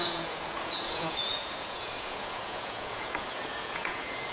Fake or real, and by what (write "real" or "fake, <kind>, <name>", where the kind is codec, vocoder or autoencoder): fake, vocoder, Vocos